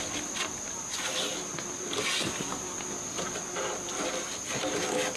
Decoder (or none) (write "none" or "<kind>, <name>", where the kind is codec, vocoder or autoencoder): none